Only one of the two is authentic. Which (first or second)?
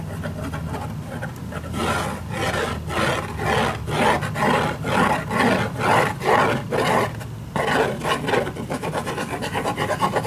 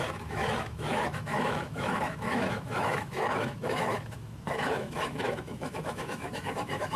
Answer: first